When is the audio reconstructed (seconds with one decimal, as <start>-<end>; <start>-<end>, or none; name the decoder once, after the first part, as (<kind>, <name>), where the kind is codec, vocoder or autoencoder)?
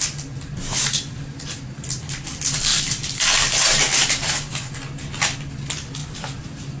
2.7-4.3 (vocoder, BigVGAN v2); 6.0-6.8